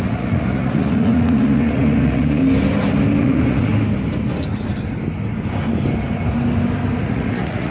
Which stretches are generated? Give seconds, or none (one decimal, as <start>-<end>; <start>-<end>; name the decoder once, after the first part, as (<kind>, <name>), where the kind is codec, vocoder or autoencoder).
0.0-2.4 (vocoder, Vocos); 3.2-3.7; 7.0-7.7